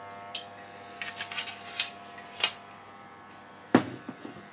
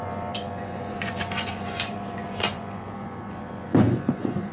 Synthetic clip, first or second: second